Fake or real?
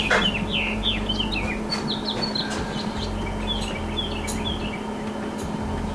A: real